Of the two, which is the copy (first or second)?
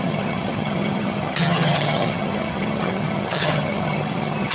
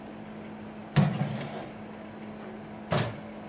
first